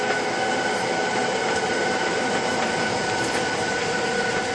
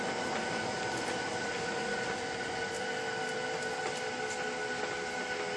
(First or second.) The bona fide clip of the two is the second